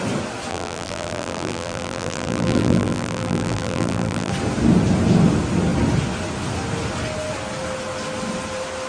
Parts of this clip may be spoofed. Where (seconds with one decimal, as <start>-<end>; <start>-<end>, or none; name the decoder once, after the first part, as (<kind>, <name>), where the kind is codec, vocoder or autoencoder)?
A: 0.5-4.3 (vocoder, BigVGAN v2)